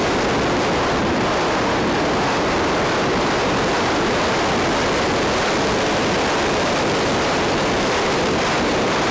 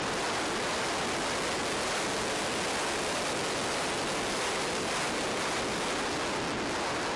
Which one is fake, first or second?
first